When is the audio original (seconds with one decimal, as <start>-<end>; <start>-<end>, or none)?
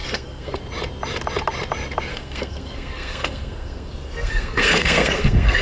0.6-2.1